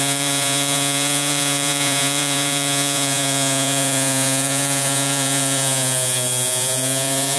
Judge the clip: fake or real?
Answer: fake